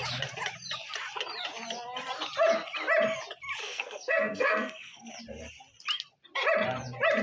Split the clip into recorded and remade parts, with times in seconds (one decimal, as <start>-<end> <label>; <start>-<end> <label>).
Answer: 0.0-3.6 recorded; 3.6-5.1 remade; 5.1-7.2 recorded